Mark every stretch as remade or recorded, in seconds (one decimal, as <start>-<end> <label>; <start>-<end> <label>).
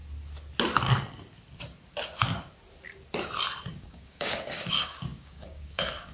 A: 0.0-3.7 recorded; 3.7-6.1 remade